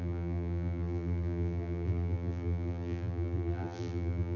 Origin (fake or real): fake